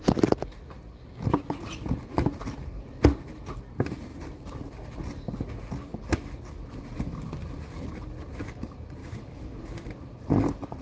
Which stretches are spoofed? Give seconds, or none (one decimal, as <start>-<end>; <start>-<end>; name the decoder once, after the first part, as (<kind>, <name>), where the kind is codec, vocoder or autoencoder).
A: 9.0-9.6 (autoencoder, DAC-VAE)